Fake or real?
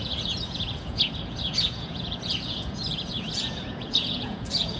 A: fake